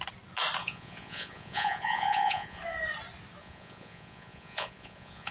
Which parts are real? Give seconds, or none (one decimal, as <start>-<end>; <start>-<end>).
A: 0.0-0.6; 2.6-3.4